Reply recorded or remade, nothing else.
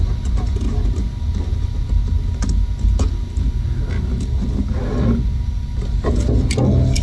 recorded